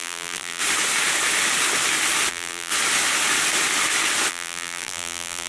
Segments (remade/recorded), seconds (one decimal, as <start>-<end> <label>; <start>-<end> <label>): 0.0-0.6 remade; 0.6-2.3 recorded; 2.3-2.7 remade; 2.7-4.3 recorded; 4.3-5.5 remade